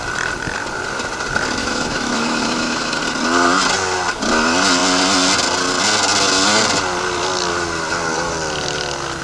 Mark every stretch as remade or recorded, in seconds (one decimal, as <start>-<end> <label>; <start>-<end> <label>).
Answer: 0.0-1.6 recorded; 1.6-3.0 remade; 3.0-9.2 recorded

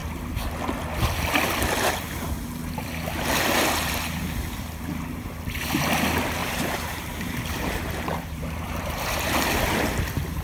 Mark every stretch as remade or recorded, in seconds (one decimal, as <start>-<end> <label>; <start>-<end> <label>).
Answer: 0.0-6.4 recorded; 6.4-9.6 remade; 9.6-10.4 recorded